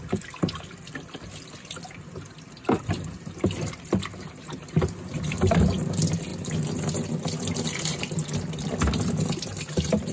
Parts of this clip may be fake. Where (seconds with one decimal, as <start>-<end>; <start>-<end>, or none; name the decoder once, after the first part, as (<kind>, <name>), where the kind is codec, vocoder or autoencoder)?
none